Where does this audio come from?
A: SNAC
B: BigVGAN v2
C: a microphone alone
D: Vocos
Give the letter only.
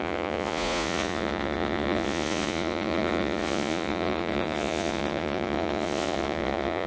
D